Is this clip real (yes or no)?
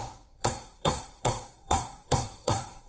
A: no